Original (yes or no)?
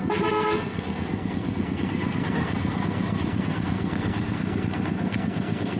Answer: no